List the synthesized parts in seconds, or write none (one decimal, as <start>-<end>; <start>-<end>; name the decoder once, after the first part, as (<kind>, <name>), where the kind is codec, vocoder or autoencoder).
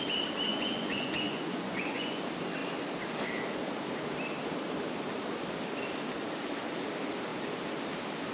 0.5-2.2 (vocoder, Vocos)